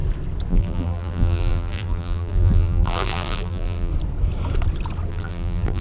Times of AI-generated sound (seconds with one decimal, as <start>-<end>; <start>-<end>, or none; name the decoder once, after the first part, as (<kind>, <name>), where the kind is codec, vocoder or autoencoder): 0.5-3.9 (vocoder, BigVGAN v2); 5.1-5.8